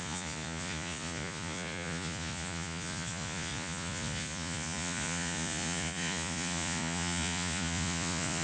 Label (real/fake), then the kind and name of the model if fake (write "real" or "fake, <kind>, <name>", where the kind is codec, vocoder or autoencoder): fake, vocoder, Vocos